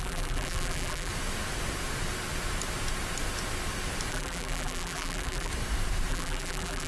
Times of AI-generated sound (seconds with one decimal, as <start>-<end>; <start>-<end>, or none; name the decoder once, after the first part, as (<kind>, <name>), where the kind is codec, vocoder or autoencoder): 0.0-1.1 (vocoder, BigVGAN v2); 4.1-5.5; 6.1-6.9